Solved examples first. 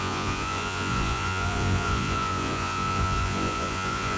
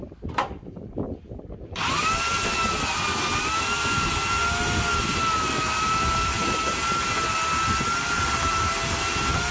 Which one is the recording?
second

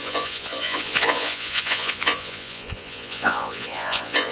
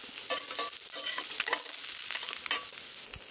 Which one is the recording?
second